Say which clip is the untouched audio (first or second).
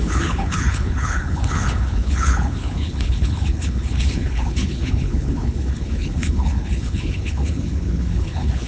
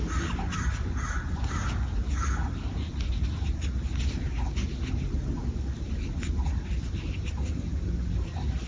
second